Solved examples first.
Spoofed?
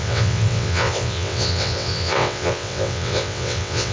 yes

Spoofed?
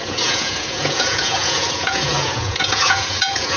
yes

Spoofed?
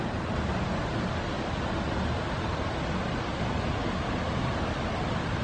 no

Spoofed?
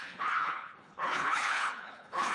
yes